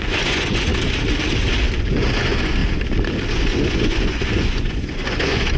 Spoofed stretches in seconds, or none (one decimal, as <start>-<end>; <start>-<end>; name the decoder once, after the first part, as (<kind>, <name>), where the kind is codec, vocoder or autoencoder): 0.0-0.7 (vocoder, Vocos); 1.9-2.6; 3.3-5.6